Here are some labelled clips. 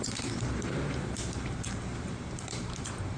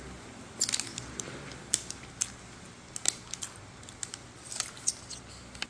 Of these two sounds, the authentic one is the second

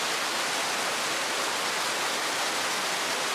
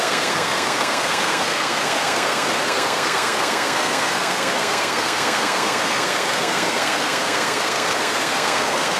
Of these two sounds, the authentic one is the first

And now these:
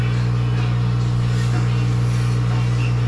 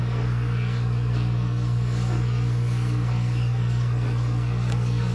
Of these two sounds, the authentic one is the first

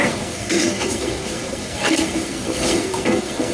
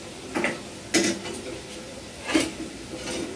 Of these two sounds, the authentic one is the second